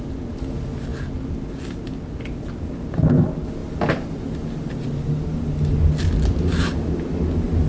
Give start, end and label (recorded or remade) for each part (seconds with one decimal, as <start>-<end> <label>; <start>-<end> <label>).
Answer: 0.0-7.7 recorded